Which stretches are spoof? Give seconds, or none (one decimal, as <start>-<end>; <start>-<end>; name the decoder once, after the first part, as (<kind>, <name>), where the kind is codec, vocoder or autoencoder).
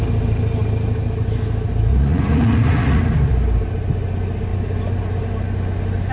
1.9-3.0 (vocoder, Vocos)